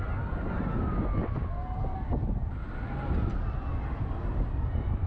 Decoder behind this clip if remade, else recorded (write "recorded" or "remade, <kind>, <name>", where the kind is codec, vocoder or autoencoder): recorded